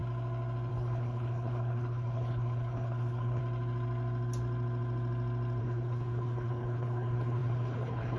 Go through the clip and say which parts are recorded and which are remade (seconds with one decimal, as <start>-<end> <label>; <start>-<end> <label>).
0.0-0.7 recorded; 0.7-3.4 remade; 3.4-5.6 recorded; 5.6-8.2 remade